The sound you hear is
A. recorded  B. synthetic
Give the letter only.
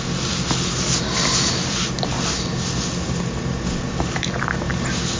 A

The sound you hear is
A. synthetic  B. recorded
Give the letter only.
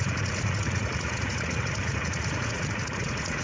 A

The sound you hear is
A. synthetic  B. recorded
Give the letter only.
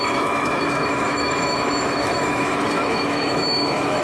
A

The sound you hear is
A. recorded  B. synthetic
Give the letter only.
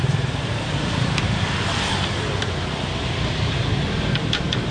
B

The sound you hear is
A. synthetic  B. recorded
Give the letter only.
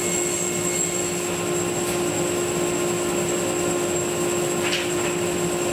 B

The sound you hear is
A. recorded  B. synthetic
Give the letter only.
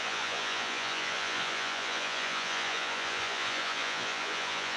B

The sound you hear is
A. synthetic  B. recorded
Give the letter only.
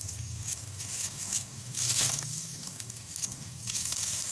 A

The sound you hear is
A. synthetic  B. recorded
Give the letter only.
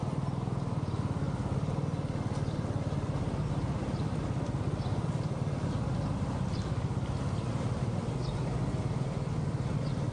B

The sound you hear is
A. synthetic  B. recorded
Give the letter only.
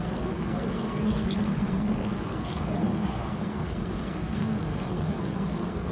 A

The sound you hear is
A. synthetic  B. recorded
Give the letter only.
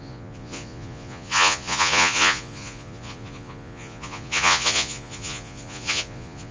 A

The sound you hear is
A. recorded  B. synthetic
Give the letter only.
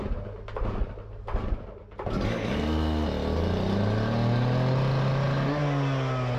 A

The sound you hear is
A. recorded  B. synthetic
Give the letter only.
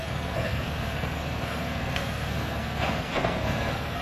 B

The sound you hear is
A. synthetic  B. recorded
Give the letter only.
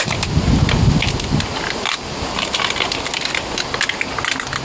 B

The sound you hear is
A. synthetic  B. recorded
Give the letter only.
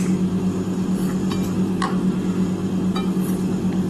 B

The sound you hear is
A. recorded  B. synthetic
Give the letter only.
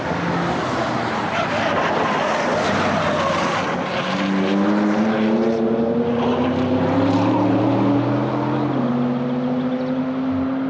A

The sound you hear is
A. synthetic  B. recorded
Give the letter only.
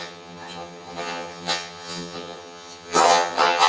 A